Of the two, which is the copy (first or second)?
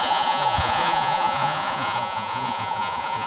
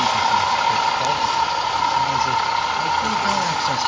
first